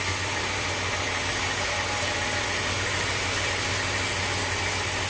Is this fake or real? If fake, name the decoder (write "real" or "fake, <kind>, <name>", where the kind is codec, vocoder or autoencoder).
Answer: real